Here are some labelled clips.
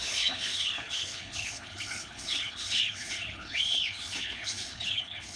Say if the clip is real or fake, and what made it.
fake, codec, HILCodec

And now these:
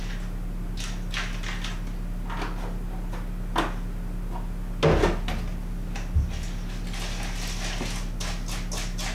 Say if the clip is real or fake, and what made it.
real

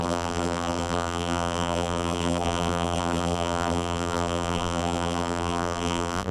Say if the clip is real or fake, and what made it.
fake, vocoder, BigVGAN v2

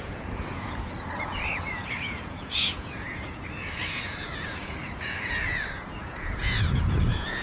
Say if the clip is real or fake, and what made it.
fake, vocoder, Vocos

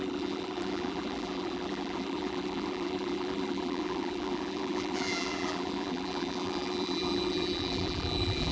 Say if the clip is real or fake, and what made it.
fake, vocoder, BigVGAN v2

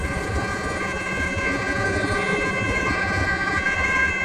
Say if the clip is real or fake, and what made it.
fake, vocoder, Vocos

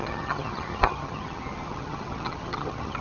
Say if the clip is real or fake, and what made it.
fake, vocoder, HiFi-GAN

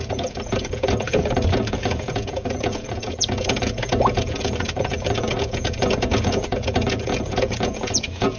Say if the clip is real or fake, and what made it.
fake, vocoder, Vocos